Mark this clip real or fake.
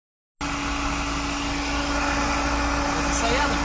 real